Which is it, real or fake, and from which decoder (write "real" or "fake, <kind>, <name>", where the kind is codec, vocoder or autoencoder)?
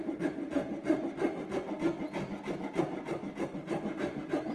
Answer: real